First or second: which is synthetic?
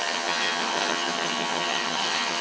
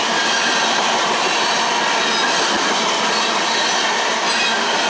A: first